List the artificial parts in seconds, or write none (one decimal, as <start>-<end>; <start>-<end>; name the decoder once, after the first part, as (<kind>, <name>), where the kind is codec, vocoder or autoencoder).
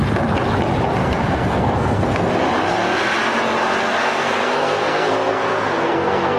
1.0-2.3 (codec, SNAC); 4.0-6.4